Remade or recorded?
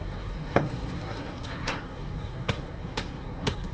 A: remade